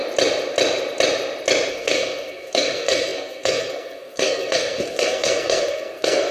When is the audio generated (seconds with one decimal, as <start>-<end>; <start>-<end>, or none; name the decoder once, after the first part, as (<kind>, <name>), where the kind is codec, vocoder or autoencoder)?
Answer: 1.7-6.3 (codec, SNAC)